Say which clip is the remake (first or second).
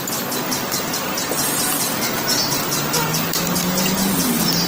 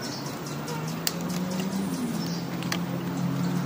first